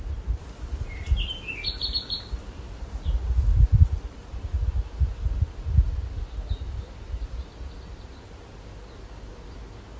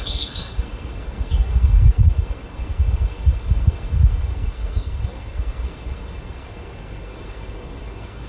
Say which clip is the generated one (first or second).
second